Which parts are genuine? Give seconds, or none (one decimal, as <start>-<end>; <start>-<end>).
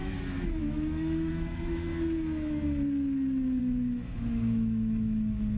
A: 1.9-3.6